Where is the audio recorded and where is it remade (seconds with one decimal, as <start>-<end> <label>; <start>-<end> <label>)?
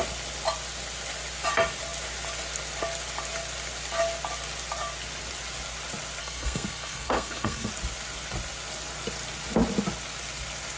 0.0-6.2 recorded; 6.2-7.7 remade; 7.7-10.8 recorded